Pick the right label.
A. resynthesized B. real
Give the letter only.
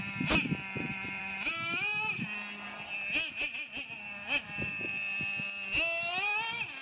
B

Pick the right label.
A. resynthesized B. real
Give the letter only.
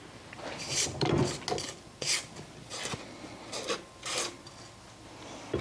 B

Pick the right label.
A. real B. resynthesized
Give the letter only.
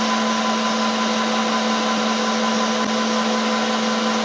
A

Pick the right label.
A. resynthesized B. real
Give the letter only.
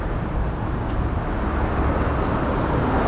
B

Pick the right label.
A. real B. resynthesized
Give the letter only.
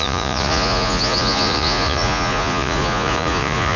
B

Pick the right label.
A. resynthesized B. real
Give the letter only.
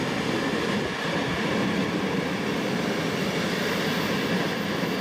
B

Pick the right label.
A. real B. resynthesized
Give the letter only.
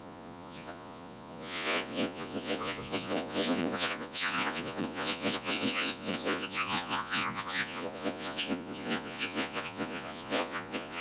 B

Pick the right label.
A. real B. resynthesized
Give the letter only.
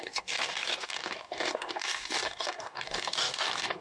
B